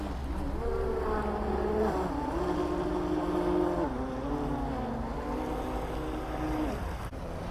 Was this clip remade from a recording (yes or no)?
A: no